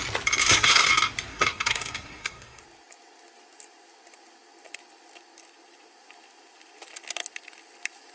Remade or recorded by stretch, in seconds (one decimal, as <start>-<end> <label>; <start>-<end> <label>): 0.0-0.4 recorded; 0.4-0.9 remade; 0.9-1.3 recorded; 1.3-2.6 remade; 2.6-8.1 recorded

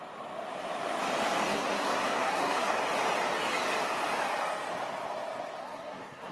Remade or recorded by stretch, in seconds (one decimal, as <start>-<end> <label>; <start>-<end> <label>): 0.0-1.5 recorded; 1.5-2.7 remade; 2.7-5.6 recorded; 5.6-6.3 remade

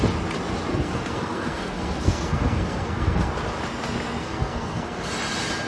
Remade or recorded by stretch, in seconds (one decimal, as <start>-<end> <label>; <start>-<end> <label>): 0.0-0.7 recorded; 0.7-3.3 remade; 3.3-4.2 recorded; 4.2-5.1 remade; 5.1-5.7 recorded

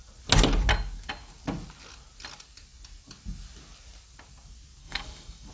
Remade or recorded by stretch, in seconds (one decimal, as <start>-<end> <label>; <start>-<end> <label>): 0.0-4.8 recorded; 4.8-5.5 remade